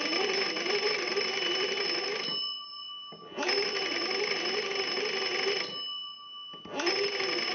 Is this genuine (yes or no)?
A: yes